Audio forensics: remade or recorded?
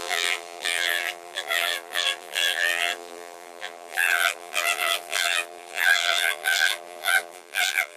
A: remade